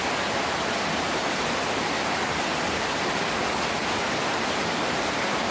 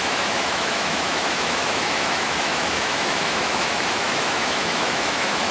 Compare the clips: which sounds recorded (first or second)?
first